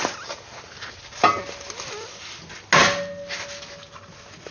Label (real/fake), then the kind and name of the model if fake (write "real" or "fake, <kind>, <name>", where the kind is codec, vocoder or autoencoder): real